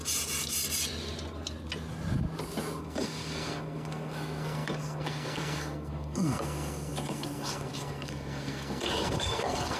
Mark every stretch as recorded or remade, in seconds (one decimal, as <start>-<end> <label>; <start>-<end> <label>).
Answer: 0.0-2.8 recorded; 2.8-9.8 remade